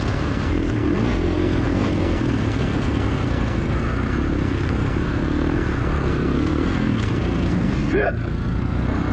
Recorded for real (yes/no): no